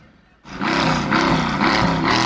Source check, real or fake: real